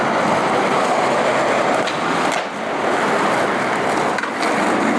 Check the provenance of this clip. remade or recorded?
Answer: recorded